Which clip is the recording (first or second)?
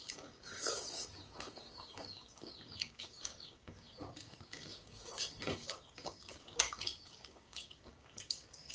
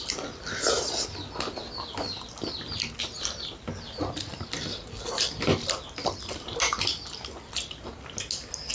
second